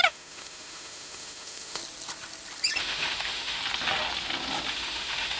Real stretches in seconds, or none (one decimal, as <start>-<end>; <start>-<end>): 1.8-2.8; 3.6-4.7